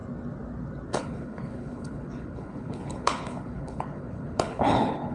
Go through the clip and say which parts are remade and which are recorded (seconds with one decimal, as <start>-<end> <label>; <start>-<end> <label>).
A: 0.0-0.9 recorded; 0.9-5.1 remade